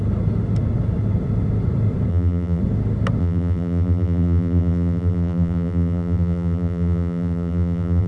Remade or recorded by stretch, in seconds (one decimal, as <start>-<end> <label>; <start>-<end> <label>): 0.0-2.1 recorded; 2.1-2.6 remade; 2.6-3.2 recorded; 3.2-8.1 remade